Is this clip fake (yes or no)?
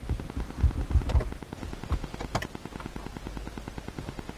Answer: no